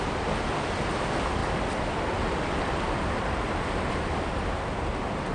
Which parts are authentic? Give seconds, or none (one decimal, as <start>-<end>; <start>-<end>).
0.0-5.3